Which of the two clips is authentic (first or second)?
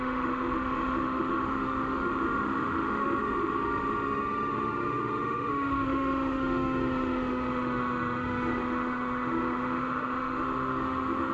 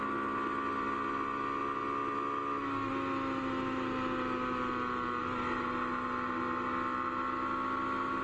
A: second